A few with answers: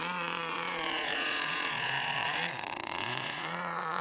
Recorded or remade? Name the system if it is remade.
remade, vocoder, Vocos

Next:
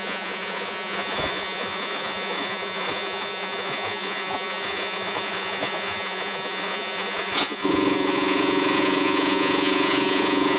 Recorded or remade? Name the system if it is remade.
remade, vocoder, Vocos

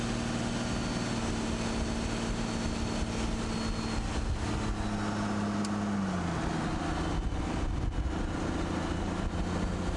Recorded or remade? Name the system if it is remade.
recorded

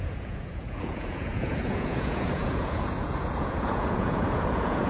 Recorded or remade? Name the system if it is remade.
remade, vocoder, Vocos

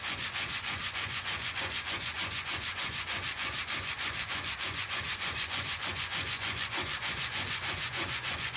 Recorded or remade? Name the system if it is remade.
remade, vocoder, Vocos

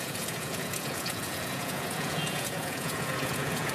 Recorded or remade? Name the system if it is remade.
remade, vocoder, Vocos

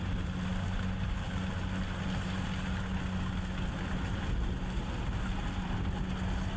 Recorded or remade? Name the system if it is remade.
recorded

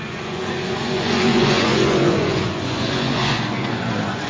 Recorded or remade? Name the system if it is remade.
remade, vocoder, Vocos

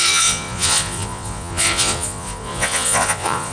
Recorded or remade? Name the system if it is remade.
remade, vocoder, Vocos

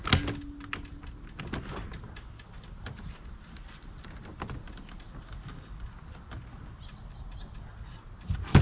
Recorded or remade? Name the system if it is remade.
recorded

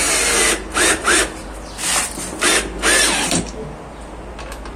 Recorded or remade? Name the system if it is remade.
recorded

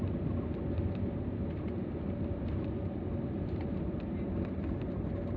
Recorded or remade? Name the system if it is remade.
recorded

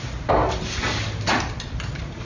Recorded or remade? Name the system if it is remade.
recorded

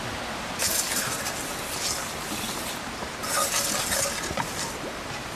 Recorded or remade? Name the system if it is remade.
recorded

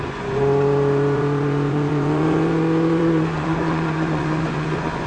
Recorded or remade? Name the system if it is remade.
remade, vocoder, Vocos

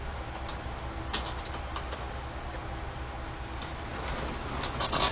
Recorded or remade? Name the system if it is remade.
recorded